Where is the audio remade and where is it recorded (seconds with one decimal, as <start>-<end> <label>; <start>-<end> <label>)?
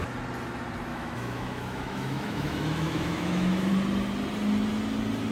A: 0.0-0.9 recorded; 0.9-3.7 remade; 3.7-5.3 recorded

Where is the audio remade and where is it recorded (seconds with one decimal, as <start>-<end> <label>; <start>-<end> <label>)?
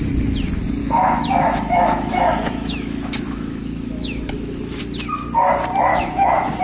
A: 0.0-0.8 recorded; 0.8-4.8 remade; 4.8-5.9 recorded; 5.9-6.6 remade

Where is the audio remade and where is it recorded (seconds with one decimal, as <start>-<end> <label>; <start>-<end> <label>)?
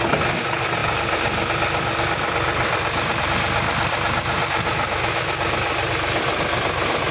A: 0.0-7.1 recorded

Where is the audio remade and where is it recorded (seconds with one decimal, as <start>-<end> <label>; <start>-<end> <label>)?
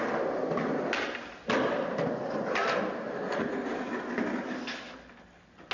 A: 0.0-5.7 recorded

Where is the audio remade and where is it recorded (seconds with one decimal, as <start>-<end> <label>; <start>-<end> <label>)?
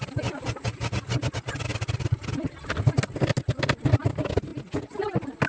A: 0.0-5.5 recorded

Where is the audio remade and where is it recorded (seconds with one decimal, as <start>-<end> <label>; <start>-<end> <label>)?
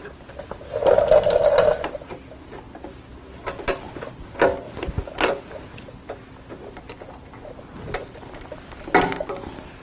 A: 0.0-9.8 recorded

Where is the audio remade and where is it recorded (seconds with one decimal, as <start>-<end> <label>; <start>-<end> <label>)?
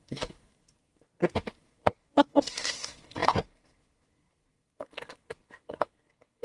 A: 0.0-6.4 remade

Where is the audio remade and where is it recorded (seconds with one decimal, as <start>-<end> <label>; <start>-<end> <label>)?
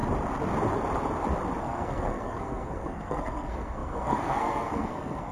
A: 0.0-1.6 recorded; 1.6-5.3 remade